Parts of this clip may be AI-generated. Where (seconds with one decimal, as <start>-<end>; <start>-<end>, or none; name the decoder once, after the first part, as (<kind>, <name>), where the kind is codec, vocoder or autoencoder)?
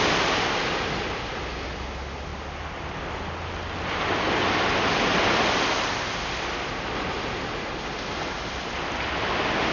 none